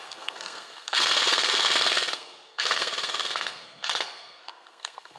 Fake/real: fake